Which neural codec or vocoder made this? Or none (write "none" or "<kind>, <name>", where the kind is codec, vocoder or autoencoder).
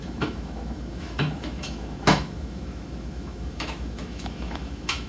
autoencoder, DAC-VAE